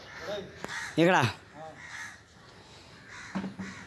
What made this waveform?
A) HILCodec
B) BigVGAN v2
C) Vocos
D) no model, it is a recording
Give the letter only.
D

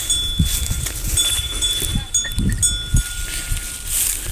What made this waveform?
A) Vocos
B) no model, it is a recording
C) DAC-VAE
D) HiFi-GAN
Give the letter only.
B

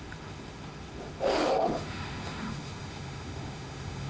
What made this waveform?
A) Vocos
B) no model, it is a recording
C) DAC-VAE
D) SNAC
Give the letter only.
C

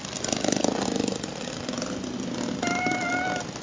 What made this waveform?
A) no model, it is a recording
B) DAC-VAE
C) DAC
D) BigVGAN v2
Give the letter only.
A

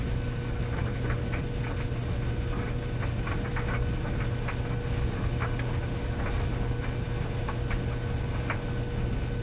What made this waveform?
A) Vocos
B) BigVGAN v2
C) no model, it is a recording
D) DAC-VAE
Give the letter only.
C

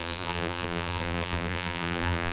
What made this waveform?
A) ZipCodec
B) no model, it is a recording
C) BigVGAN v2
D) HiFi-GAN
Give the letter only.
C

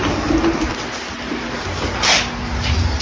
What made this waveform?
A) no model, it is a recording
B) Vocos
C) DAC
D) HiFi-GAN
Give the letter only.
A